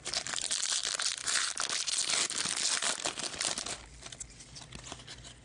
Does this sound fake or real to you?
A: real